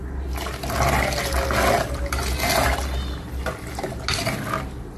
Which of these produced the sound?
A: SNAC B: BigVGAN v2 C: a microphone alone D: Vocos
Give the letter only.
C